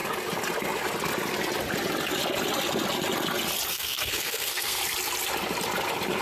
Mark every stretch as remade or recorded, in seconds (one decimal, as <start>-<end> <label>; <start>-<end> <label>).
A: 0.0-3.7 recorded; 3.7-4.8 remade; 4.8-6.2 recorded